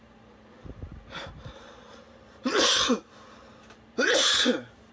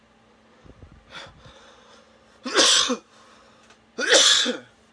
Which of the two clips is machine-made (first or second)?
first